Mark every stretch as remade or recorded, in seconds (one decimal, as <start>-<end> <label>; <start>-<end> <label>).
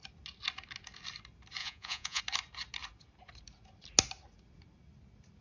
0.0-1.6 recorded; 1.6-2.2 remade; 2.2-5.4 recorded